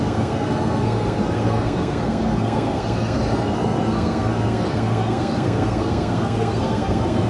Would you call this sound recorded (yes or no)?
no